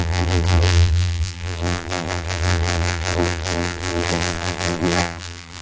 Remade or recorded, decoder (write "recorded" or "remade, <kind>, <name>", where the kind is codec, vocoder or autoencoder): remade, vocoder, BigVGAN v2